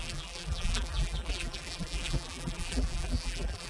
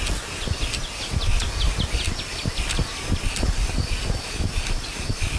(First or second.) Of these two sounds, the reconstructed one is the first